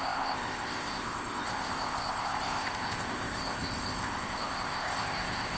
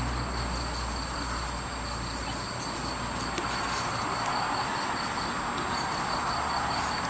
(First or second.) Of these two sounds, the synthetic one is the first